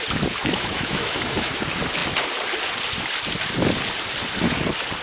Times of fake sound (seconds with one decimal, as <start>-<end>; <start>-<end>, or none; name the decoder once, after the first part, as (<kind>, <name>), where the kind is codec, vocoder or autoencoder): 0.4-1.6 (autoencoder, DAC-VAE)